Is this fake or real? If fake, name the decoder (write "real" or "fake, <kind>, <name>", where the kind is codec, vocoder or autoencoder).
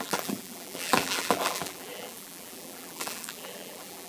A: fake, vocoder, BigVGAN v2